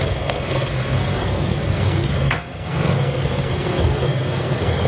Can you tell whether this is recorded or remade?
remade